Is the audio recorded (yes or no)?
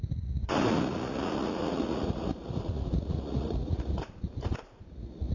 no